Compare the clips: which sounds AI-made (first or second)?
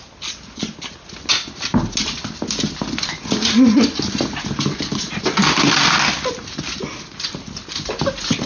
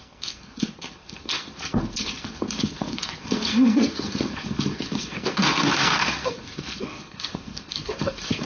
second